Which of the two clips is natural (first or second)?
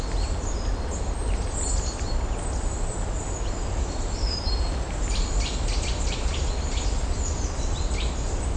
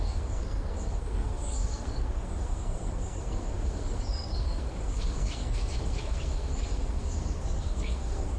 first